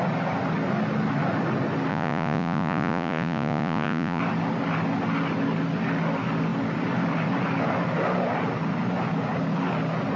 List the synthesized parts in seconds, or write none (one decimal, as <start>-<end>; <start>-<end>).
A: 1.9-4.2